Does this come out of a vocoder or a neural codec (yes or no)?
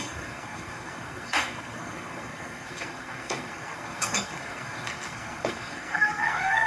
yes